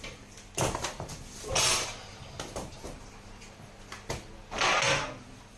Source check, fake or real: real